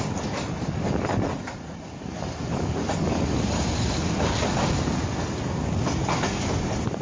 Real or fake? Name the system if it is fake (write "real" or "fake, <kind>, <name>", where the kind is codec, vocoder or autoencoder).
real